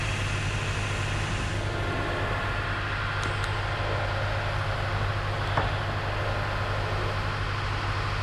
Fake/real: real